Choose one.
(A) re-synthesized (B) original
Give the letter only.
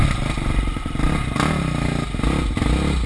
B